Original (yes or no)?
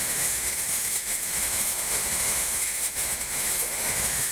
no